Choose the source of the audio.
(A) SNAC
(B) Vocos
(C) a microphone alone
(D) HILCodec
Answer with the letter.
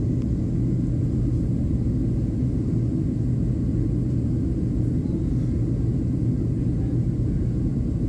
C